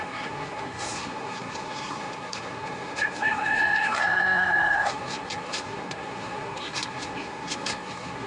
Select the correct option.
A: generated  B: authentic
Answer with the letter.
A